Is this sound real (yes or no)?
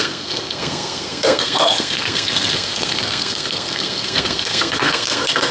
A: no